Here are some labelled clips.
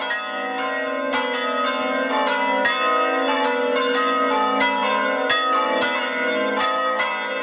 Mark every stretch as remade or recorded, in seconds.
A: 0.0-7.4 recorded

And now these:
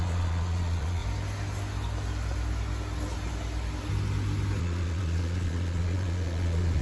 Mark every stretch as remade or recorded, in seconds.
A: 0.0-1.0 remade; 1.0-4.6 recorded; 4.6-6.8 remade

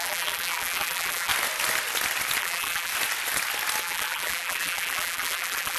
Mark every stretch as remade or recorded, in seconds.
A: 0.0-1.3 remade; 1.3-2.4 recorded; 2.4-2.9 remade; 2.9-3.8 recorded; 3.8-5.8 remade

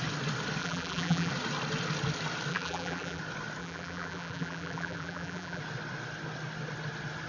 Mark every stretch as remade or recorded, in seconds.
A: 0.0-0.6 recorded; 0.6-1.3 remade; 1.3-2.5 recorded; 2.5-3.2 remade; 3.2-3.6 recorded; 3.6-5.6 remade; 5.6-7.3 recorded

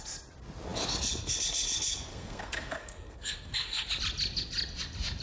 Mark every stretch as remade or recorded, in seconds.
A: 0.0-2.1 recorded; 2.1-3.9 remade; 3.9-5.2 recorded

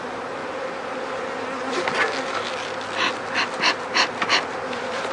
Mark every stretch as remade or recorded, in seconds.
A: 0.0-5.1 recorded